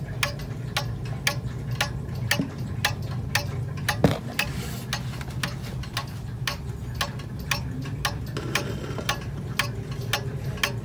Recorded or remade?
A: recorded